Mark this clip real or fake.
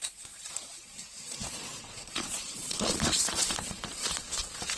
fake